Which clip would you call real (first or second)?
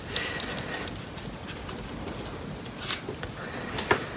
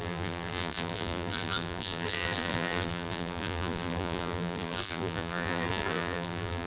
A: first